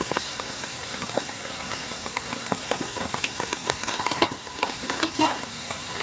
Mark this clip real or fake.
fake